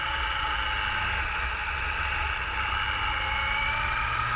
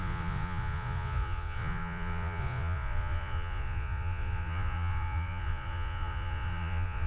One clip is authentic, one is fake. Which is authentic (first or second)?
first